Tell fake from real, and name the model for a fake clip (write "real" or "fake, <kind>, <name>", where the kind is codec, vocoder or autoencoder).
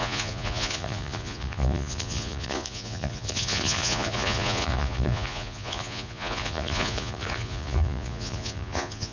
fake, vocoder, Vocos